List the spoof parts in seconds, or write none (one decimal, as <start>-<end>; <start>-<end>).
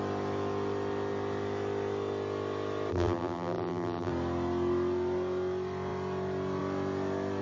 2.9-4.1